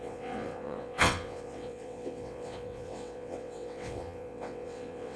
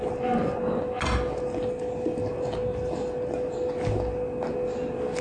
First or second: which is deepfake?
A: first